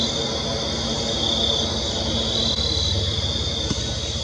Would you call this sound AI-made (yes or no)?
no